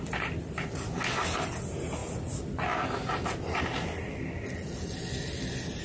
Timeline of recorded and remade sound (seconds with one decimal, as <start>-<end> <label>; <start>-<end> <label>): 0.0-5.8 recorded